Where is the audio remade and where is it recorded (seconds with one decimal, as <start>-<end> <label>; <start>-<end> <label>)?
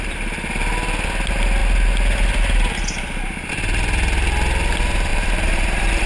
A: 0.0-5.1 recorded; 5.1-6.1 remade